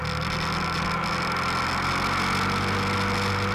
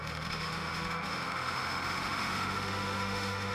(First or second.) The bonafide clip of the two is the first